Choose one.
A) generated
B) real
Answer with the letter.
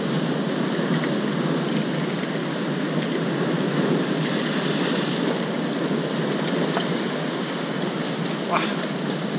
B